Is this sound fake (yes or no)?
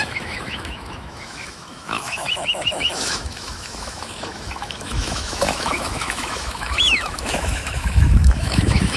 yes